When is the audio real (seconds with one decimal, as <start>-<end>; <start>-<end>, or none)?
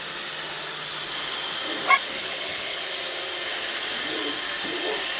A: 0.0-2.2; 2.8-5.2